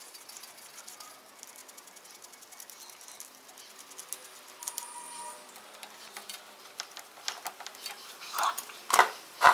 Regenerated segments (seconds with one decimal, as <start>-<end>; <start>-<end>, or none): none